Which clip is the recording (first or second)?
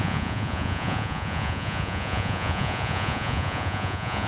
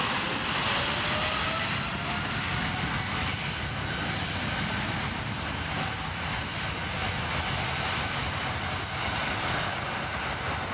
second